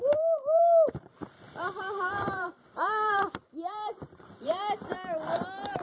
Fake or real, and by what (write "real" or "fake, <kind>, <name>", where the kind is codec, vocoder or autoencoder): fake, vocoder, BigVGAN v2